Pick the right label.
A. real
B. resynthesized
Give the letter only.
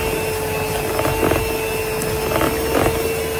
A